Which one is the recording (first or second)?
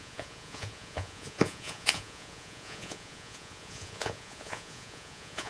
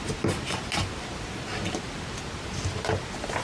second